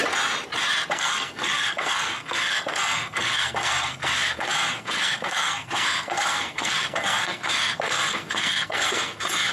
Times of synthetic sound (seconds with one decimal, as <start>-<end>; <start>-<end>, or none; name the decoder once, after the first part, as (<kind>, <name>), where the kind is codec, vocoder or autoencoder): 0.9-9.5 (codec, SNAC)